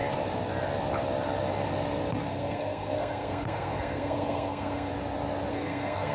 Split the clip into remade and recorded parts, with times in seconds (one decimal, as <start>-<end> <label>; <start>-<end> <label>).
0.0-2.3 recorded; 2.3-4.9 remade; 4.9-5.5 recorded; 5.5-6.1 remade